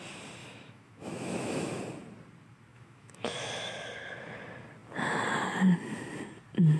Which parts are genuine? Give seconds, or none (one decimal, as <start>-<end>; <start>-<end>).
0.0-0.4; 1.8-2.7; 3.5-6.8